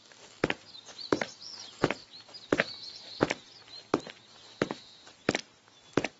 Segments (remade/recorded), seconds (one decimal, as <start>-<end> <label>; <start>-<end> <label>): 0.0-2.0 remade; 2.0-4.8 recorded; 4.8-5.2 remade; 5.2-6.2 recorded